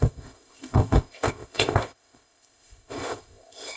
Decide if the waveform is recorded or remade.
remade